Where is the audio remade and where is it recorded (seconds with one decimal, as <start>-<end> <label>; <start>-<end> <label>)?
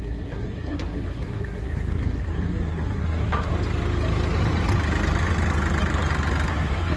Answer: 0.0-3.5 remade; 3.5-6.5 recorded; 6.5-7.0 remade